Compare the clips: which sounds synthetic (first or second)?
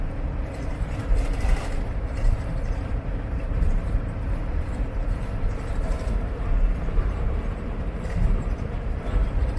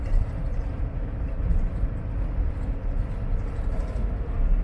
first